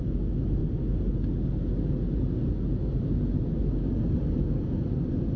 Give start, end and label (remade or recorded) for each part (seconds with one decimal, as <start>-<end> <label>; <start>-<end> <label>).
0.0-5.4 recorded